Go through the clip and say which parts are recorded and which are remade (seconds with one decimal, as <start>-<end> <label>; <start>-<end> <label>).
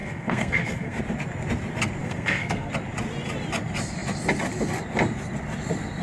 0.0-1.0 remade; 1.0-2.0 recorded; 2.0-2.7 remade; 2.7-6.0 recorded